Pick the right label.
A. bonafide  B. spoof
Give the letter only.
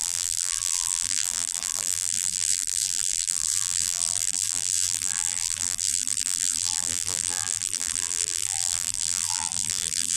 B